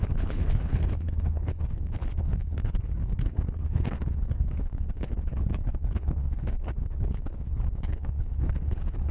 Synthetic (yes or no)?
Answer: yes